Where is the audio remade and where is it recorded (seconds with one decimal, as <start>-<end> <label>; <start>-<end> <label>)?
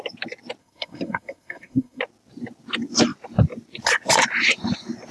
0.0-0.6 recorded; 0.6-2.0 remade; 2.0-5.1 recorded